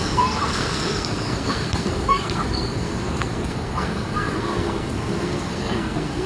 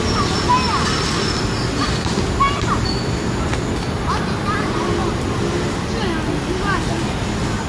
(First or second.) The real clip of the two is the second